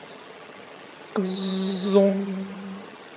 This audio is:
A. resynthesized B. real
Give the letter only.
A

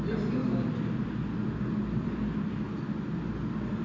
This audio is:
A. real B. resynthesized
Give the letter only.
A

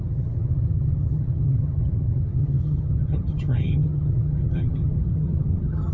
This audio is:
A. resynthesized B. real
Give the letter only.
A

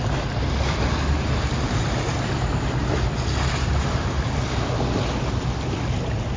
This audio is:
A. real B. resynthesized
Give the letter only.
A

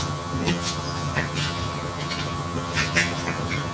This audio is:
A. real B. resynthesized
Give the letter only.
B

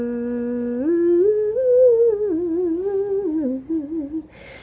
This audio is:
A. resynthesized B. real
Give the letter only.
B